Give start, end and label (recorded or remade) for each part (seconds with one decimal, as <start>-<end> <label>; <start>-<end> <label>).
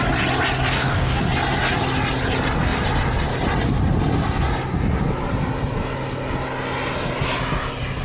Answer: 0.0-0.7 recorded; 0.7-1.2 remade; 1.2-8.0 recorded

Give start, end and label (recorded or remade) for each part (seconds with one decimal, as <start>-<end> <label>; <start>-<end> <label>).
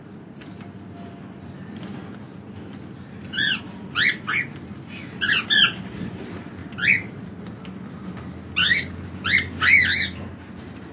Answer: 0.0-8.6 recorded; 8.6-9.2 remade; 9.2-10.9 recorded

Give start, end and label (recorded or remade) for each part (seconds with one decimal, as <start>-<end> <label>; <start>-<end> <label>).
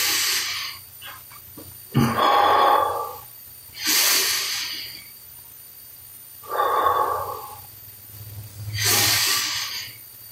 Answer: 0.0-8.5 recorded; 8.5-9.5 remade; 9.5-10.3 recorded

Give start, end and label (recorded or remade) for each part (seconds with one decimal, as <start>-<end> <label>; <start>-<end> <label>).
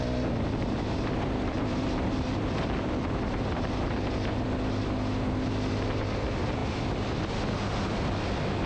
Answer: 0.0-8.7 recorded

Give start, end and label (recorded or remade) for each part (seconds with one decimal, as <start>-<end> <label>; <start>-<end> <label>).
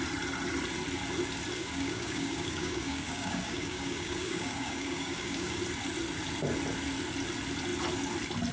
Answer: 0.0-1.6 recorded; 1.6-5.6 remade; 5.6-8.5 recorded